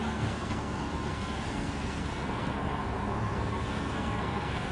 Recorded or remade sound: remade